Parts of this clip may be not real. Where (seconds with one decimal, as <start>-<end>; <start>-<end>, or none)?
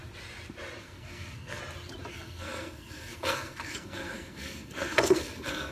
0.8-1.6; 2.1-5.7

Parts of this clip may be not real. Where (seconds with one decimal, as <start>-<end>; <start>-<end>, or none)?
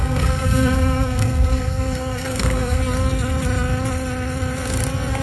0.0-2.8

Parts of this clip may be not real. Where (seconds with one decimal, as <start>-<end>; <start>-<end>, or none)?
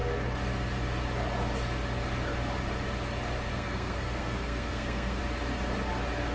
3.5-5.2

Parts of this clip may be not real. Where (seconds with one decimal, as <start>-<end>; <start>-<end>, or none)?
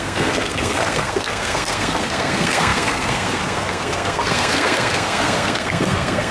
0.0-6.3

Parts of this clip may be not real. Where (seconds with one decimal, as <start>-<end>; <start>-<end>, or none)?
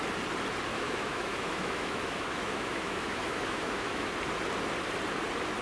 0.7-4.1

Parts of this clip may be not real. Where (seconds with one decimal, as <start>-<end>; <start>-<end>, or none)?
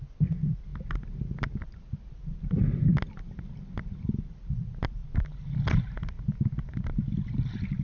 none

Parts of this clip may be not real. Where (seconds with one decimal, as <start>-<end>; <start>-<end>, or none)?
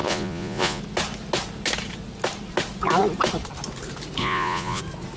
0.0-0.8; 4.2-4.8